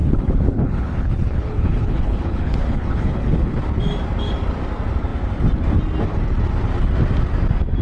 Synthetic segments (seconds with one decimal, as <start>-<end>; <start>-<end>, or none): 0.0-3.6